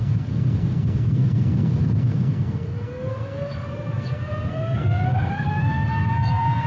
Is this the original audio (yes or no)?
no